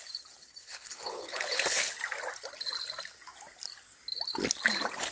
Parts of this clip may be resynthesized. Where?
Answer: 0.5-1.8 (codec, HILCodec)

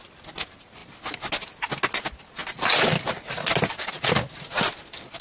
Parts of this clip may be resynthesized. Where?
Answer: none